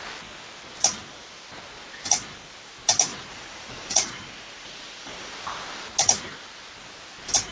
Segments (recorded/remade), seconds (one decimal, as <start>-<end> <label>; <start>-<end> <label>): 0.0-3.1 recorded; 3.1-5.3 remade; 5.3-7.5 recorded